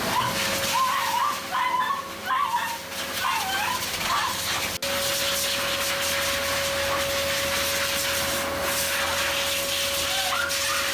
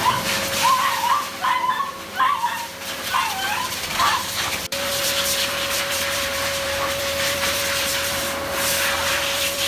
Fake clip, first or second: second